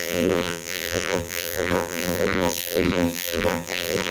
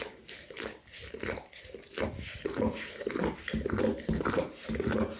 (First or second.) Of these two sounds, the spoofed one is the first